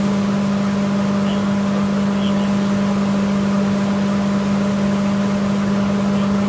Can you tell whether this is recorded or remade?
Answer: recorded